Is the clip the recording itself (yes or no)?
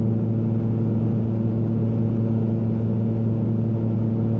yes